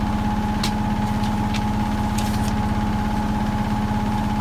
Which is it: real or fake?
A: real